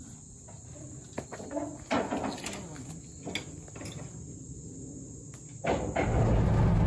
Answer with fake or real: real